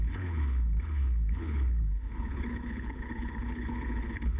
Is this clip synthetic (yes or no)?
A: yes